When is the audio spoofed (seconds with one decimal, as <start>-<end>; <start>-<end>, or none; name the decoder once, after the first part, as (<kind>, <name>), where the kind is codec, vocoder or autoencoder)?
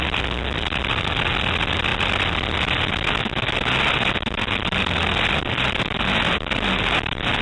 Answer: none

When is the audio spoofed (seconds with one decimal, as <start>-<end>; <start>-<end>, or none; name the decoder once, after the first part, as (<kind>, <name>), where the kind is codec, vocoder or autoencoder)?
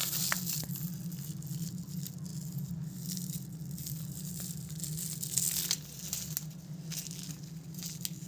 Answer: none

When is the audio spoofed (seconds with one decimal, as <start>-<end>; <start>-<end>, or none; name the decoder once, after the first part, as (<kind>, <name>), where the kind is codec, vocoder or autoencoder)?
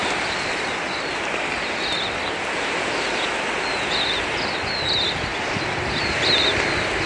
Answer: 0.0-4.3 (vocoder, BigVGAN v2); 5.3-6.1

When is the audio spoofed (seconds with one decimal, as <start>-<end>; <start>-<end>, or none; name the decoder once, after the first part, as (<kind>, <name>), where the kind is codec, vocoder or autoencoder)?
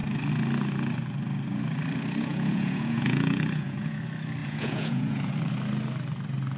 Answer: 2.3-4.0 (vocoder, Vocos); 4.4-5.3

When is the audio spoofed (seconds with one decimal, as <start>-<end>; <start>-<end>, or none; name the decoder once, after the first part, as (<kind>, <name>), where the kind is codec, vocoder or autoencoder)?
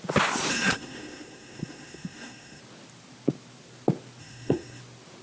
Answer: 0.5-2.6 (codec, SNAC); 4.2-4.8